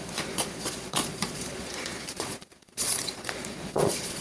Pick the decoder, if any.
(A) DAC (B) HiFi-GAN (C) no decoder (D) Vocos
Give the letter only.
D